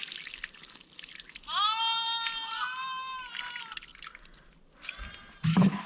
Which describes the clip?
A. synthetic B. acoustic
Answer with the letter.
B